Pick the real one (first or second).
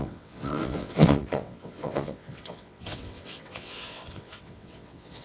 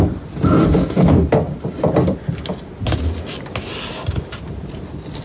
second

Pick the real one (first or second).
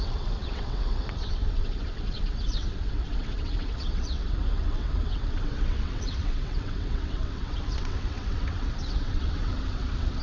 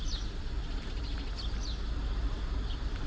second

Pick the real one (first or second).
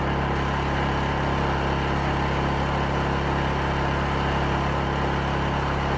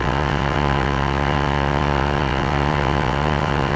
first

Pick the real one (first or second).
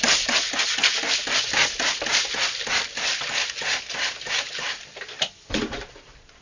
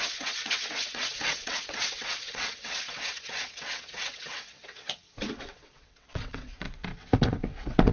first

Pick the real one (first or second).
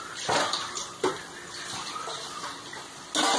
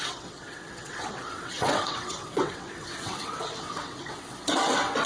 first